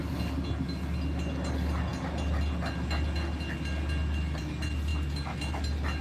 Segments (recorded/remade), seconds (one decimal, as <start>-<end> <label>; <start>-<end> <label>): 0.0-6.0 recorded